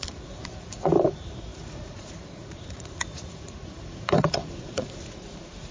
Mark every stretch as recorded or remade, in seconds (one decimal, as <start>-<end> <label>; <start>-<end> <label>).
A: 0.0-5.7 remade

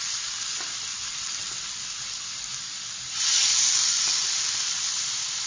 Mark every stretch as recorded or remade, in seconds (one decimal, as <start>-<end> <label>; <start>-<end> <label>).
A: 0.0-5.5 recorded

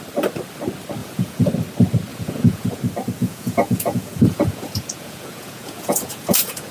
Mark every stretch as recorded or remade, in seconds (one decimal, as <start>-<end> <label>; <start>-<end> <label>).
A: 0.0-1.0 recorded; 1.0-1.5 remade; 1.5-2.1 recorded; 2.1-2.8 remade; 2.8-3.2 recorded; 3.2-6.7 remade